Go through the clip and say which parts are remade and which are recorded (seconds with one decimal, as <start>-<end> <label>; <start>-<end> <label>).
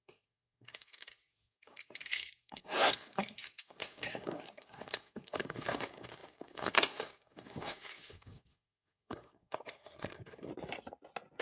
0.0-10.5 remade; 10.5-11.4 recorded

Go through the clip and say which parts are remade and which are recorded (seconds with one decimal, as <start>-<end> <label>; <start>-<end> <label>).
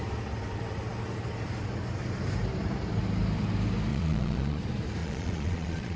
0.0-3.9 recorded; 3.9-4.6 remade; 4.6-5.0 recorded; 5.0-6.0 remade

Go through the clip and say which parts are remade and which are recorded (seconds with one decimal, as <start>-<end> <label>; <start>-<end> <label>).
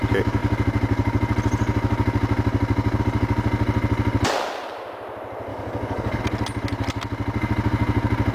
0.0-5.5 recorded; 5.5-6.2 remade; 6.2-8.3 recorded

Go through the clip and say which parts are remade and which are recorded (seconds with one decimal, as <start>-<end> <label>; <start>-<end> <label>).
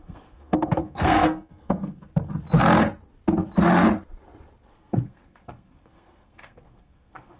0.0-2.1 remade; 2.1-4.7 recorded; 4.7-7.4 remade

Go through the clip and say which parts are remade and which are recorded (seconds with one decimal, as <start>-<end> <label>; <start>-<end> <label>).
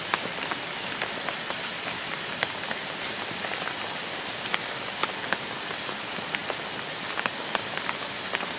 0.0-8.6 recorded